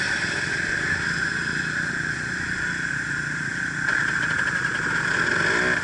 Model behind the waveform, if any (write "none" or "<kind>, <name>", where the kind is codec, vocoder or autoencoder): none